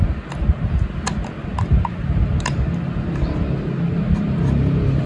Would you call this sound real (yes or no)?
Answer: yes